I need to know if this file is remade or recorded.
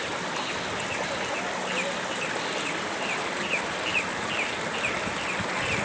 recorded